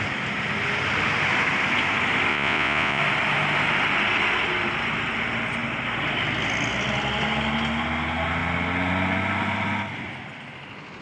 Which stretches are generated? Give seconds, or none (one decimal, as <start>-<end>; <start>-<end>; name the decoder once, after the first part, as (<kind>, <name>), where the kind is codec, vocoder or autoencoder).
2.3-3.0 (vocoder, Vocos)